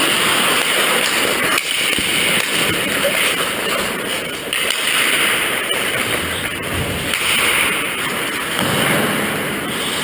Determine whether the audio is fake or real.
real